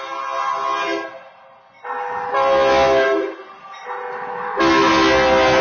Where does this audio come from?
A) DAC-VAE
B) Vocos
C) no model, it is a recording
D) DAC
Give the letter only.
C